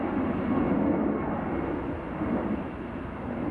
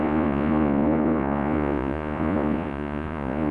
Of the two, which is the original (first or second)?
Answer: first